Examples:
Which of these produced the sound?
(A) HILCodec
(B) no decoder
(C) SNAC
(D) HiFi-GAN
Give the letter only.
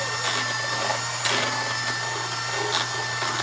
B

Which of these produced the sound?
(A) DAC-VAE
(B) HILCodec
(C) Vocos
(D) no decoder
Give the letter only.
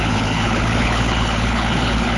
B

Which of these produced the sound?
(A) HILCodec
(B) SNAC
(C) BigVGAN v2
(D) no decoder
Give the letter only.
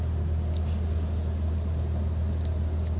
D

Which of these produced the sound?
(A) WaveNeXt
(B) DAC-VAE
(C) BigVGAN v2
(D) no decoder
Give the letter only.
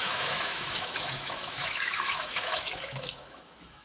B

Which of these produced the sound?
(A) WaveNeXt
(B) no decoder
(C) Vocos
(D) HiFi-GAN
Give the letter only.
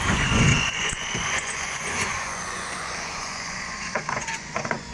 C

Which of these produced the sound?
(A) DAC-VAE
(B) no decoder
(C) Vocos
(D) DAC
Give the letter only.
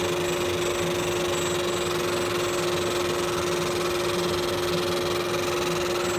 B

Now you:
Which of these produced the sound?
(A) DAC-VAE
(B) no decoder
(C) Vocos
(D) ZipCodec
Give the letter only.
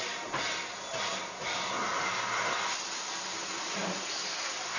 B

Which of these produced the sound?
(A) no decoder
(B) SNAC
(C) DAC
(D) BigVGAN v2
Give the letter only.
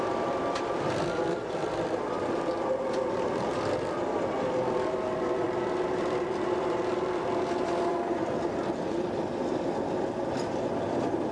D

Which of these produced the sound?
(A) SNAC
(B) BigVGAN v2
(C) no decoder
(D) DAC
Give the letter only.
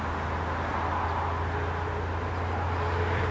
C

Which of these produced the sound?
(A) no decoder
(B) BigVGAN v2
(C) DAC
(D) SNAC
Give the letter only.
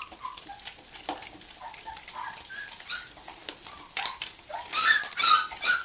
A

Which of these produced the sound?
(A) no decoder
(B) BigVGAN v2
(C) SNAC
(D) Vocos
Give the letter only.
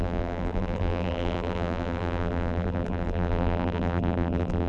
B